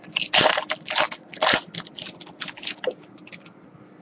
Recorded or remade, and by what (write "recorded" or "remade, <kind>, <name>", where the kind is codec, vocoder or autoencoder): recorded